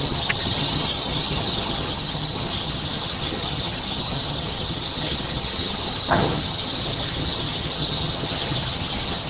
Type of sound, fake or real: fake